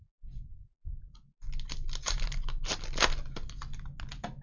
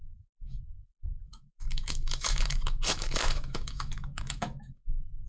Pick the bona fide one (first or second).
first